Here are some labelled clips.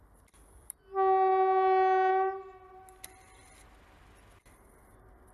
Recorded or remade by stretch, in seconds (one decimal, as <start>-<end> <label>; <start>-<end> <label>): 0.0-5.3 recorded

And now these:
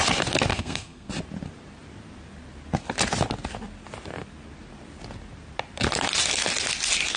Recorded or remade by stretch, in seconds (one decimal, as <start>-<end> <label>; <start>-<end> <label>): 0.0-0.5 recorded; 0.5-1.1 remade; 1.1-7.2 recorded

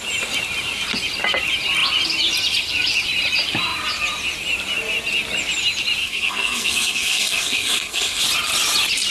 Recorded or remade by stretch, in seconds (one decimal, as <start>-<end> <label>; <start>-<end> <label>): 0.0-6.0 recorded; 6.0-8.2 remade; 8.2-9.1 recorded

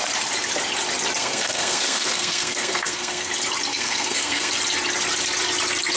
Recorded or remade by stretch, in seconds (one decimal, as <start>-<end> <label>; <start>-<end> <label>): 0.0-1.2 recorded; 1.2-3.3 remade; 3.3-3.7 recorded; 3.7-4.5 remade; 4.5-6.0 recorded

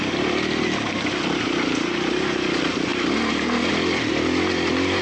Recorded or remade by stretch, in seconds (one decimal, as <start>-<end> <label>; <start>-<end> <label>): 0.0-5.0 recorded

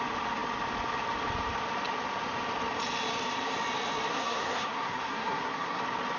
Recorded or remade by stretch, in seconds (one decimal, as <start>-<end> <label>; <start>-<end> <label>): 0.0-4.1 recorded; 4.1-5.8 remade; 5.8-6.2 recorded